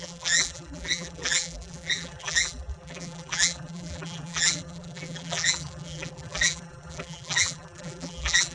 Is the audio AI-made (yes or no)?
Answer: yes